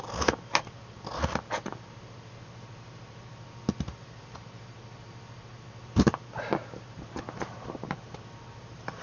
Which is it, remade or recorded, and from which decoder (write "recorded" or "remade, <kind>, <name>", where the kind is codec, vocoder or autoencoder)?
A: recorded